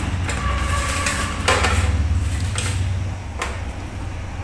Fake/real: real